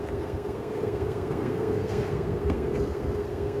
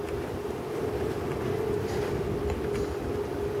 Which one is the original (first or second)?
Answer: second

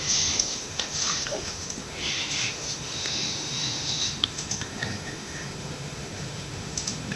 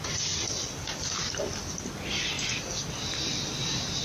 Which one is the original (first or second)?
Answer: second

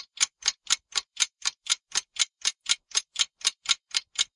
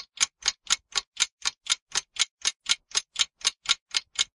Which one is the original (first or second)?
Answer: second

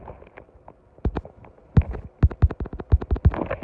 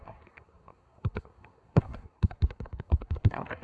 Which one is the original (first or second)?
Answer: first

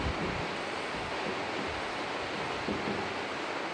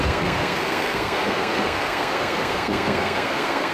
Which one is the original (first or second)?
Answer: first